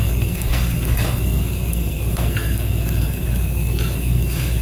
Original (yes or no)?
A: no